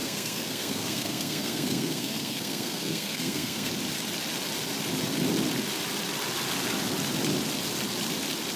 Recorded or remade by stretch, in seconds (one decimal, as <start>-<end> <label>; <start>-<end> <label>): 0.0-3.7 remade; 3.7-8.6 recorded